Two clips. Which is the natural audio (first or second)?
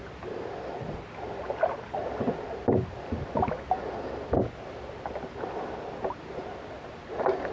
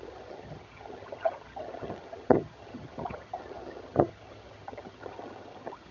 first